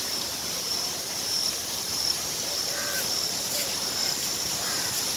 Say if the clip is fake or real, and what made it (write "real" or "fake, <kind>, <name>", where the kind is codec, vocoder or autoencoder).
fake, vocoder, BigVGAN v2